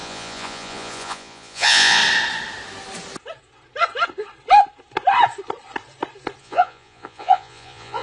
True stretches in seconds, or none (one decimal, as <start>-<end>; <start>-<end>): 2.0-6.4